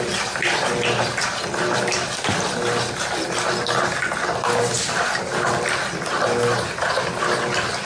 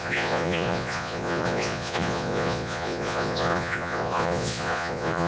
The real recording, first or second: first